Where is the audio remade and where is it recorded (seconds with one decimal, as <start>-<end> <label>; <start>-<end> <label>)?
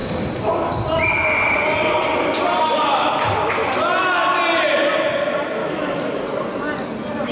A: 0.0-5.6 recorded; 5.6-6.2 remade; 6.2-7.3 recorded